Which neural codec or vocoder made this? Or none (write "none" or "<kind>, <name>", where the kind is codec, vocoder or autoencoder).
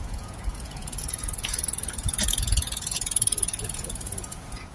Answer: vocoder, Vocos